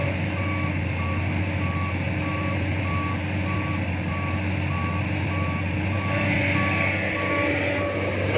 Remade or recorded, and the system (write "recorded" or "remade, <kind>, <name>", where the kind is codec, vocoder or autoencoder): recorded